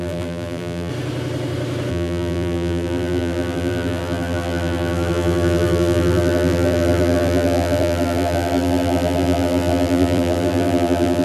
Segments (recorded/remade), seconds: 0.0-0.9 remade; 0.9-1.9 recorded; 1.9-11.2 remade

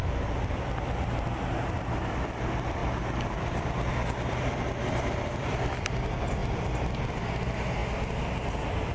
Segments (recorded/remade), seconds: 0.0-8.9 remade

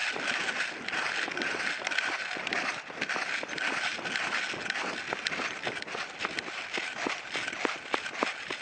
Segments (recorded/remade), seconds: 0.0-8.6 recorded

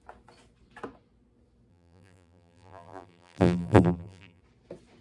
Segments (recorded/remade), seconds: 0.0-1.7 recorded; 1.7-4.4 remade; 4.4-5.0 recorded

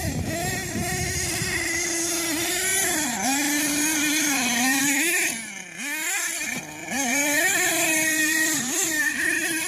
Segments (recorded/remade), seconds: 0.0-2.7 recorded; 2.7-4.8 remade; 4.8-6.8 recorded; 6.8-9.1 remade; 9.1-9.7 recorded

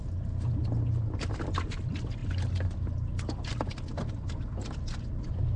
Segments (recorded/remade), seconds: 0.0-5.6 recorded

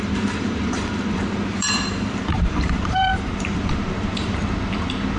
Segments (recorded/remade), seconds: 0.0-4.4 remade; 4.4-5.2 recorded